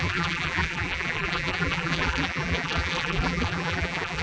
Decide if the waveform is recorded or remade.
remade